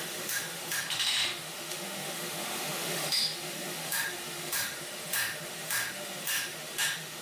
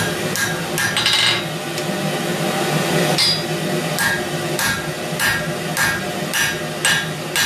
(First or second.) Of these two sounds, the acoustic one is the second